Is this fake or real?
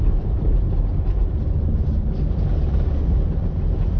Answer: fake